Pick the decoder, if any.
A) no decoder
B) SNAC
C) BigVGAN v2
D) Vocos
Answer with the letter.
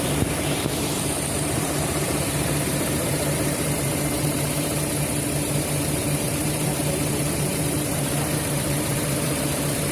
C